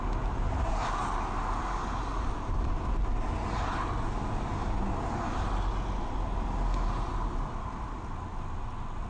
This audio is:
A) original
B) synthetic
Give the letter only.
A